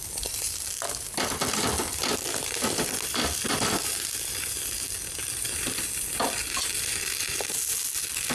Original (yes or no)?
yes